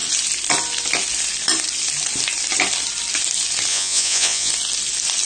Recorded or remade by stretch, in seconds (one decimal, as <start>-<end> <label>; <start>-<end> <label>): 0.0-3.7 recorded; 3.7-4.5 remade; 4.5-5.2 recorded